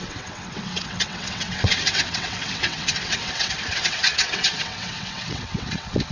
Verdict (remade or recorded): remade